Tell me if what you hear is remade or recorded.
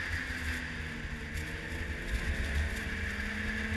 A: recorded